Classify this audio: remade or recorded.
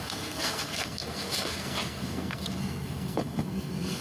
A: remade